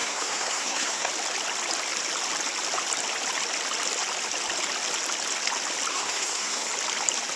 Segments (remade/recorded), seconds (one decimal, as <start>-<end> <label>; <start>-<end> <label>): 0.0-1.1 remade; 1.1-5.9 recorded; 5.9-6.7 remade; 6.7-7.4 recorded